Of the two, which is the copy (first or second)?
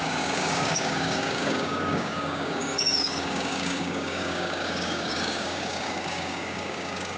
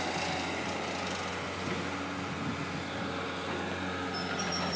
first